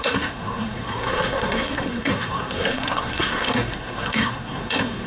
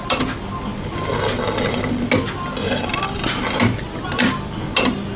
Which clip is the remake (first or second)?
first